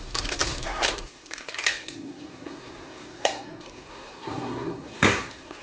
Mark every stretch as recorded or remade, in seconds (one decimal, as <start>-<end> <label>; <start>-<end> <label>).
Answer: 0.0-5.6 remade